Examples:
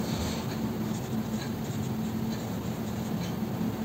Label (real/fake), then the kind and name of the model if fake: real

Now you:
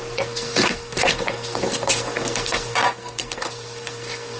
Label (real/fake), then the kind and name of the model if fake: fake, codec, SNAC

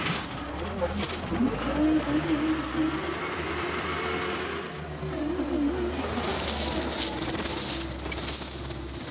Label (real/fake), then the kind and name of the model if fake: real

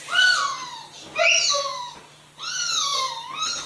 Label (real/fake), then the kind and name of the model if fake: real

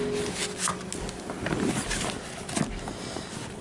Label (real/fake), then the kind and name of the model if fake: real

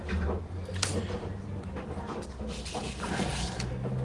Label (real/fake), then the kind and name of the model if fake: real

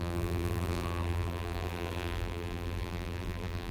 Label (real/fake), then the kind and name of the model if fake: fake, vocoder, BigVGAN v2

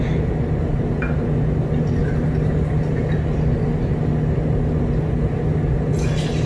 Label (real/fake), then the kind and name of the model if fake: real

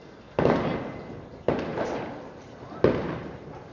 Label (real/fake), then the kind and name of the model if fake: real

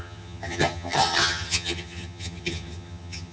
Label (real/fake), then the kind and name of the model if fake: fake, vocoder, HiFi-GAN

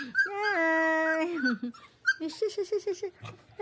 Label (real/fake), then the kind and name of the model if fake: real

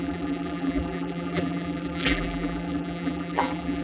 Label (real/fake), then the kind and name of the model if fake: fake, vocoder, BigVGAN v2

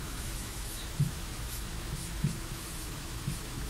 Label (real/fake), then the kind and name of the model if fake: fake, autoencoder, DAC-VAE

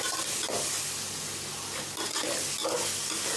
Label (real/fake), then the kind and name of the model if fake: real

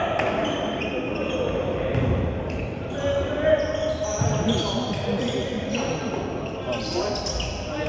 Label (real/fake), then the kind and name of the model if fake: real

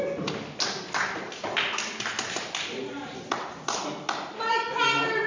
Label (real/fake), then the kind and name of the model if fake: real